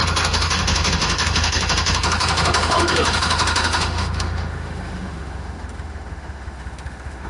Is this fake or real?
fake